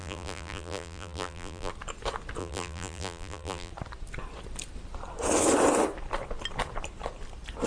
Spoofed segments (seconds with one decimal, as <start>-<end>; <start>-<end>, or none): 0.0-1.7; 2.4-3.7